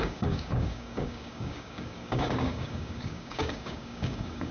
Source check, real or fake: fake